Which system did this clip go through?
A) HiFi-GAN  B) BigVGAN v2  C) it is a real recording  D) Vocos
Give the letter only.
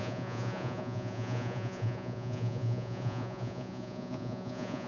D